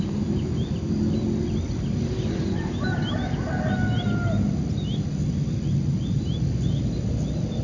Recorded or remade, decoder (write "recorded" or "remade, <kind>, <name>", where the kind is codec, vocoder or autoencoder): recorded